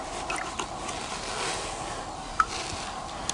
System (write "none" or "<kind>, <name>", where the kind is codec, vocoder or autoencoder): none